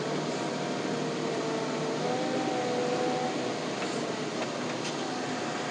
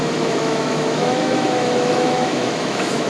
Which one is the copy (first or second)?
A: second